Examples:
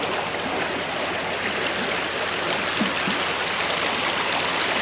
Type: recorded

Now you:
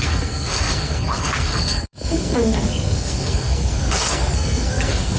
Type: remade